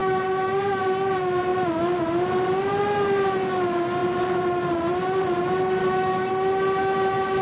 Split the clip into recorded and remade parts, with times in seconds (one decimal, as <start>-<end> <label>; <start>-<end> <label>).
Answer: 0.0-0.8 remade; 0.8-5.8 recorded; 5.8-6.3 remade; 6.3-7.4 recorded